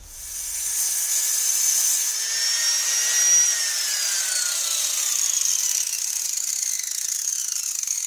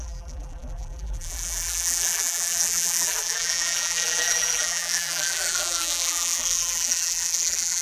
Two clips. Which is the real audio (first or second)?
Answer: first